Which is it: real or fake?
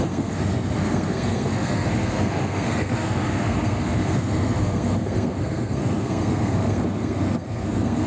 fake